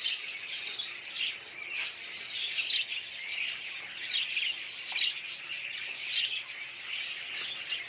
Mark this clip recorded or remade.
recorded